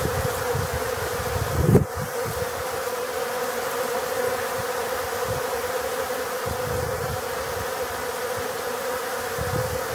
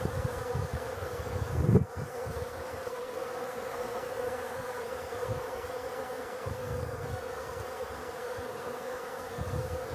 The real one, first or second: first